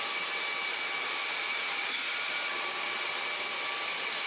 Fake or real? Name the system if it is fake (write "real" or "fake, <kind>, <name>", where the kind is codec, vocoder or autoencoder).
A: real